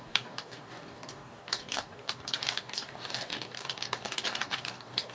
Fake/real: fake